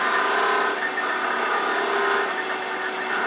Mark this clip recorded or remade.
recorded